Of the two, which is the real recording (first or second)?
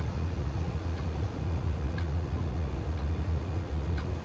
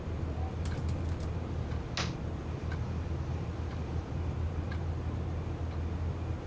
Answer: second